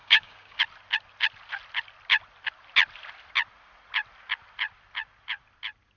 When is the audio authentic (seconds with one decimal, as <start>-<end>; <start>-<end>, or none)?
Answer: 0.6-6.0